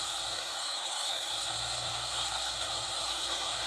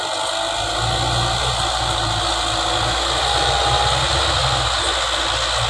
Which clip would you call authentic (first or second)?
second